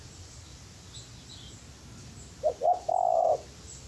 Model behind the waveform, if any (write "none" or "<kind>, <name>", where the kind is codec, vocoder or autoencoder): none